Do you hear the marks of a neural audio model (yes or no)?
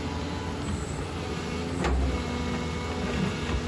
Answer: no